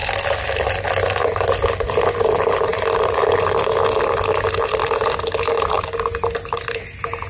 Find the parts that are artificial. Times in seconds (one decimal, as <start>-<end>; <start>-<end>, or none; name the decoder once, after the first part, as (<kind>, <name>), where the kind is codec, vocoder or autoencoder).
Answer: none